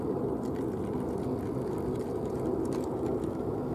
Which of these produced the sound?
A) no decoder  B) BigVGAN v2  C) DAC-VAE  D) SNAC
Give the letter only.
A